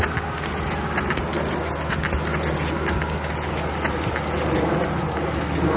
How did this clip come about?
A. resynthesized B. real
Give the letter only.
B